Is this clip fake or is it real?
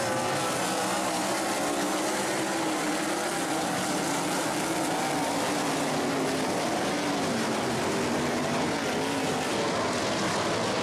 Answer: real